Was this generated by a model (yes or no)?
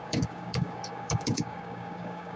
yes